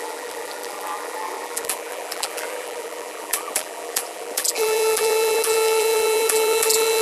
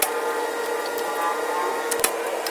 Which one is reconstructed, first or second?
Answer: first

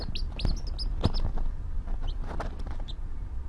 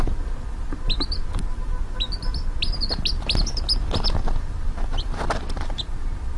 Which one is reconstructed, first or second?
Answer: second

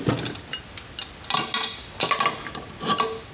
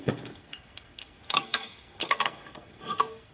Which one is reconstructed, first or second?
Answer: second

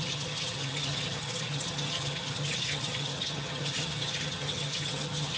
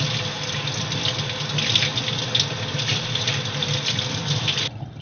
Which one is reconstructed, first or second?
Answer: first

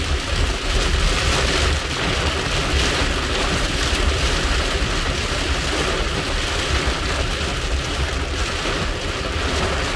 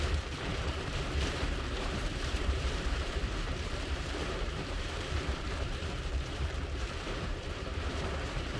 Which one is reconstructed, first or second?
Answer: second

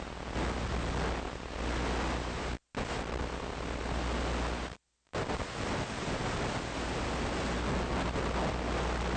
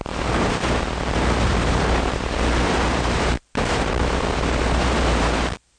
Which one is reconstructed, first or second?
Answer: second